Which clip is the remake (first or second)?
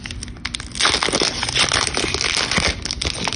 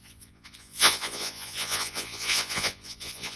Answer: second